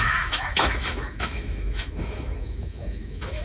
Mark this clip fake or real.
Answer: fake